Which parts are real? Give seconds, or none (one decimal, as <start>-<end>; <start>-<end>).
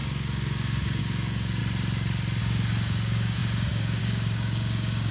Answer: 1.6-2.4